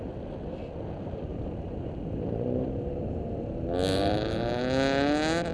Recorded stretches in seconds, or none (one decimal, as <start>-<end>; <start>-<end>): 0.0-1.3; 4.6-5.5